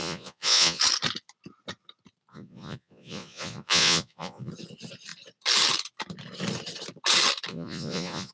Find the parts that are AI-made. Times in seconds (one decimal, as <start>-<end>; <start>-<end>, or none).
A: 0.0-0.8; 2.3-4.5; 7.5-8.3